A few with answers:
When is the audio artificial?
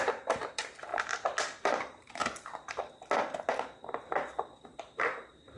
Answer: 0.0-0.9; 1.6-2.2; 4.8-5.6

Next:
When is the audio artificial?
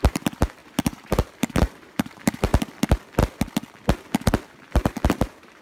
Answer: 0.0-2.5; 4.5-5.6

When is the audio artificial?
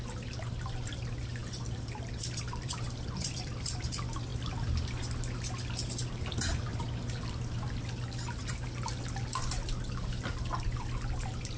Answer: 1.4-3.9